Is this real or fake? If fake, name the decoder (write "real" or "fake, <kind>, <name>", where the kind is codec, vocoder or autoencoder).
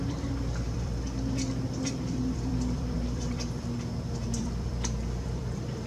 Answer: fake, vocoder, BigVGAN v2